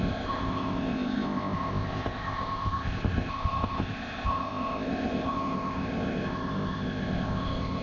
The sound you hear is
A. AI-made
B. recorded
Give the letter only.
A